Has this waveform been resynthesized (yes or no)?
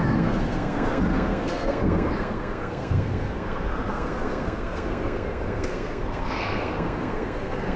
yes